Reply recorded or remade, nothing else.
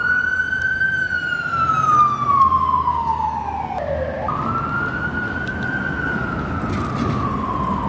recorded